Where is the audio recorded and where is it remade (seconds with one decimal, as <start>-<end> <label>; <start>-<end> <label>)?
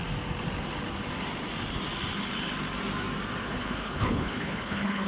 0.0-3.4 recorded; 3.4-5.1 remade